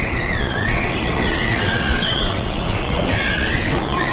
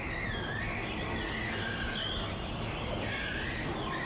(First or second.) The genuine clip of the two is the second